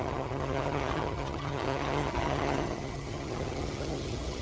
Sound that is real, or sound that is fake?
fake